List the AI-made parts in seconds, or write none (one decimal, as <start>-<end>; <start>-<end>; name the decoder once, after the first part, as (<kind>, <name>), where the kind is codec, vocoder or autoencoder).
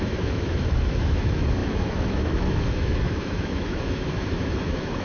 0.0-5.0 (autoencoder, DAC-VAE)